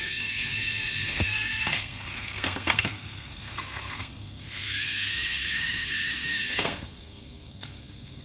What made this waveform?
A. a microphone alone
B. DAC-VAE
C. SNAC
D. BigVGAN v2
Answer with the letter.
C